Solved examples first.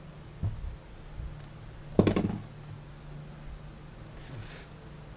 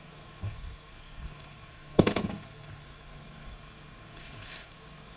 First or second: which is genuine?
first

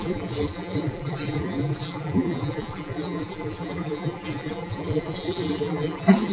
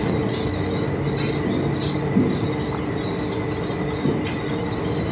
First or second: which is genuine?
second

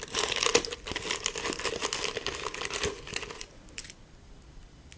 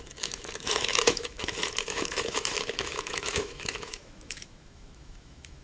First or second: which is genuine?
first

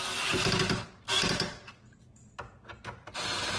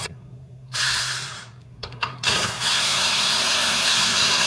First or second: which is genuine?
first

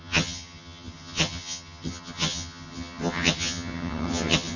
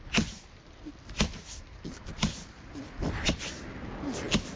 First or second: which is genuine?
second